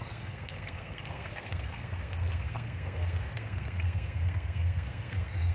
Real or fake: fake